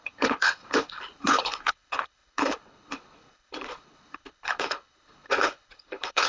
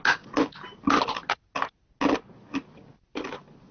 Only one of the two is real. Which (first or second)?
second